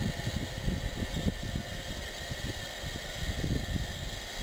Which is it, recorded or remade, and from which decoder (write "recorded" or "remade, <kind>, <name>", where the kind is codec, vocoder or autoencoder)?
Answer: recorded